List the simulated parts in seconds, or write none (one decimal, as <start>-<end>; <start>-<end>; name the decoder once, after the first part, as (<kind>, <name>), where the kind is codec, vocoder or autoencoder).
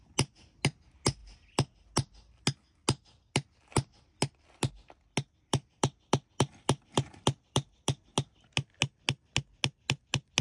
none